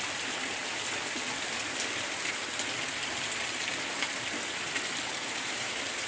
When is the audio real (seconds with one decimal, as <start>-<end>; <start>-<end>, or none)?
0.6-4.3